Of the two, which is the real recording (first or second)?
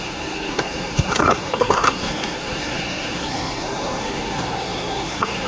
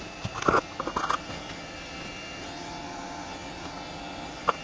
second